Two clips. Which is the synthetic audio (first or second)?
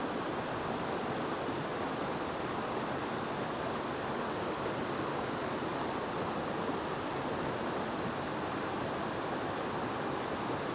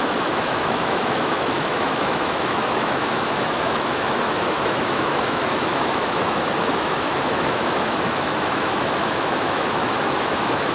second